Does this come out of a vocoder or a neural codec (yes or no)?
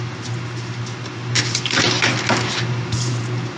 no